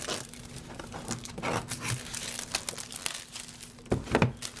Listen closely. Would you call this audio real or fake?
real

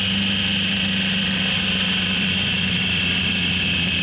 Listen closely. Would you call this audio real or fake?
real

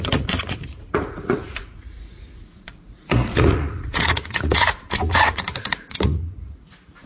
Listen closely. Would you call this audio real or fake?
fake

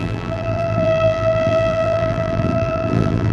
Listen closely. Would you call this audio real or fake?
fake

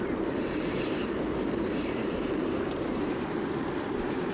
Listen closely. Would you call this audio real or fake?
fake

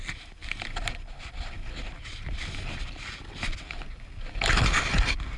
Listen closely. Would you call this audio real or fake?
real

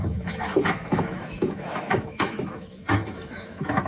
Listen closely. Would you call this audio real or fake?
fake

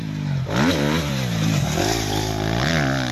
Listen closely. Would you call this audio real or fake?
real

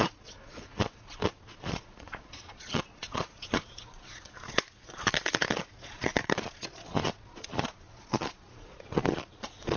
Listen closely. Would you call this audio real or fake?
fake